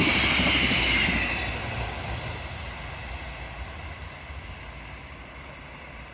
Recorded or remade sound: recorded